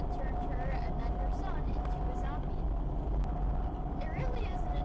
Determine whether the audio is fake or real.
real